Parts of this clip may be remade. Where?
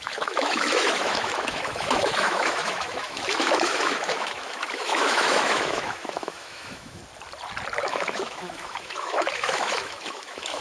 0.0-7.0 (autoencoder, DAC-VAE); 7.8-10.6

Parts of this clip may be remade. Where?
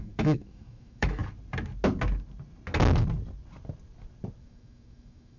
0.0-1.2 (autoencoder, DAC-VAE); 4.4-5.4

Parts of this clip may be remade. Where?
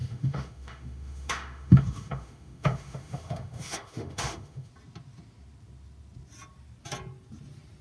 0.0-4.7 (autoencoder, DAC-VAE)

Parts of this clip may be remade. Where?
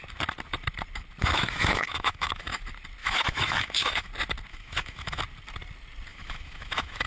1.2-2.6 (autoencoder, DAC-VAE); 3.0-4.1; 4.5-5.2; 6.1-7.1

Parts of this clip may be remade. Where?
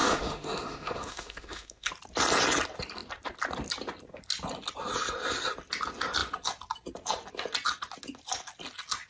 0.0-1.9 (autoencoder, DAC-VAE)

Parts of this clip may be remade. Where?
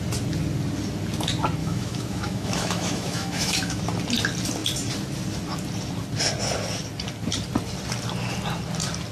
1.6-3.8 (autoencoder, DAC-VAE)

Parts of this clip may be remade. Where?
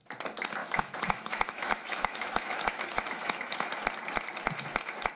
0.6-3.7 (autoencoder, DAC-VAE)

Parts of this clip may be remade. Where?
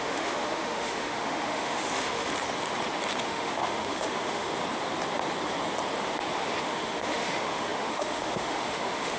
0.0-2.3 (autoencoder, DAC-VAE); 3.2-4.5; 6.6-9.2